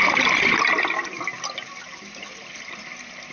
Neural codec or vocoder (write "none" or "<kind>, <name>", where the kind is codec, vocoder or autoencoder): none